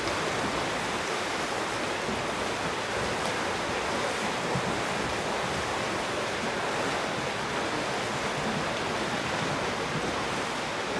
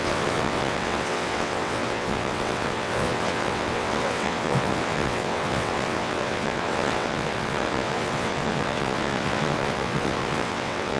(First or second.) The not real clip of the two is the second